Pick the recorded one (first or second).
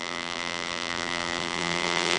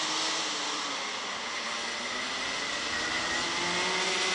second